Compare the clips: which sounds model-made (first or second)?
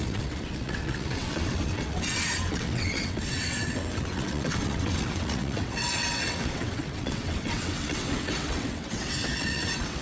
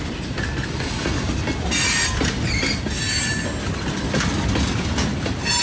first